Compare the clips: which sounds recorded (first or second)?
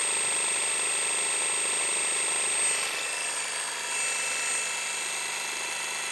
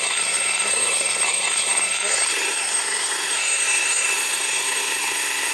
first